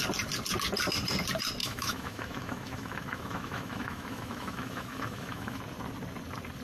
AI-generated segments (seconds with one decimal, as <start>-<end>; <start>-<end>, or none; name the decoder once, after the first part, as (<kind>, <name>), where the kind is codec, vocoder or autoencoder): 1.6-5.6 (autoencoder, DAC-VAE)